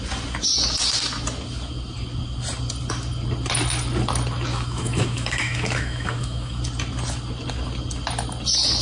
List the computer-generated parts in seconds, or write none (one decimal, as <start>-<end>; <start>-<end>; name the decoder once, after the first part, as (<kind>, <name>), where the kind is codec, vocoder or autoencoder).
4.5-6.6 (autoencoder, DAC-VAE)